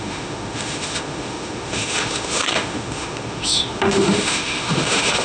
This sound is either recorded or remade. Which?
remade